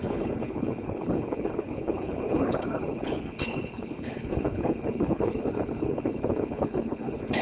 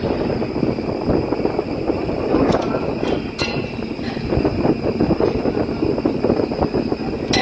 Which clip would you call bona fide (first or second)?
second